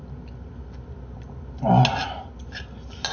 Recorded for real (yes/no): yes